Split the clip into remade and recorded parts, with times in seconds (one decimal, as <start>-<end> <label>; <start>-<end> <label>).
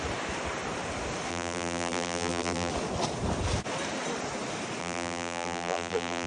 0.0-1.3 recorded; 1.3-2.7 remade; 2.7-4.8 recorded; 4.8-6.3 remade